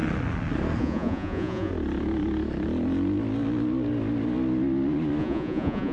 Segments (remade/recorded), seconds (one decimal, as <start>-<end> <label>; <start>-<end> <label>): 0.0-0.8 recorded; 0.8-1.7 remade; 1.7-5.2 recorded; 5.2-5.9 remade